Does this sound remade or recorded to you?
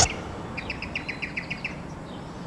recorded